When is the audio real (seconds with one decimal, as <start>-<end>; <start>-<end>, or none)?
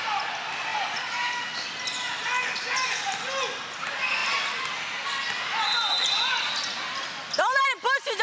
0.0-8.2